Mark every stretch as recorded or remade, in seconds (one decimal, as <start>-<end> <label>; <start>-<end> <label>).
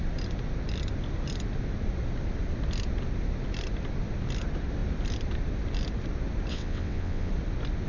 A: 0.0-6.5 recorded; 6.5-7.3 remade; 7.3-7.9 recorded